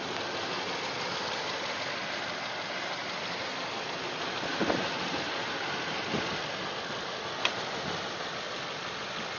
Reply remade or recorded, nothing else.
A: recorded